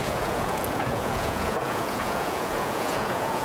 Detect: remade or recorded remade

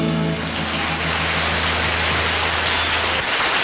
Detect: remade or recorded recorded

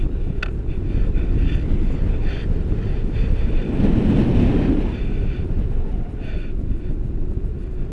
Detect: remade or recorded recorded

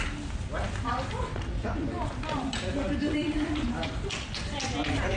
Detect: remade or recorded recorded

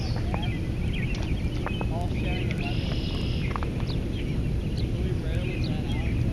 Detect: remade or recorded recorded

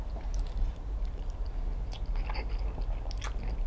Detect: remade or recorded recorded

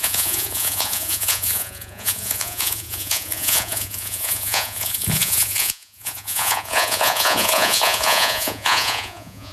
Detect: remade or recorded remade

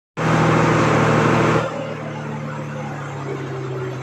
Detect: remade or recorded recorded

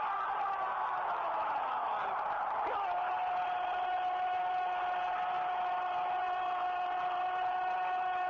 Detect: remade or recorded recorded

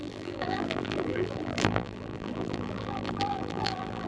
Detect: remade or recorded remade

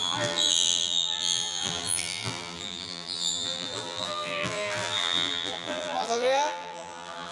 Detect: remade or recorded remade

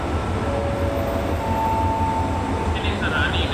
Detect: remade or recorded recorded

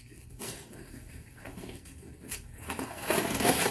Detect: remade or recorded remade